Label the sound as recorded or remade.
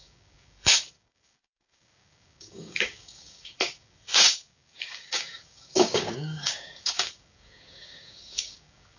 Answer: remade